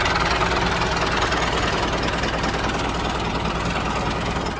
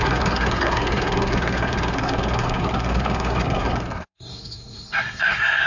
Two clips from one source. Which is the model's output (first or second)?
second